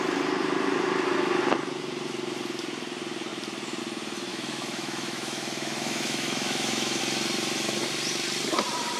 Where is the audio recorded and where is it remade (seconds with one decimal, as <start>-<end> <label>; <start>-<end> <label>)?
0.0-4.3 recorded; 4.3-7.0 remade; 7.0-9.0 recorded